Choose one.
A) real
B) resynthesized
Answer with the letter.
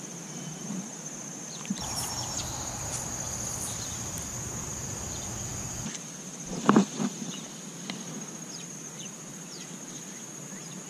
B